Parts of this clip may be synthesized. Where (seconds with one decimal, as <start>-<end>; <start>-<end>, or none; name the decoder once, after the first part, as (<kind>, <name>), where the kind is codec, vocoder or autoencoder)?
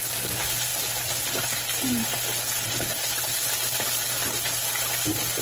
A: none